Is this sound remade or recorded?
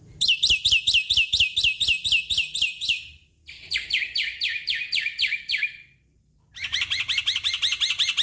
remade